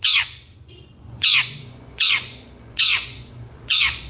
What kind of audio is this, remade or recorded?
remade